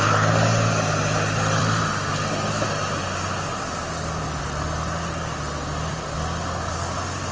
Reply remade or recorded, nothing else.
recorded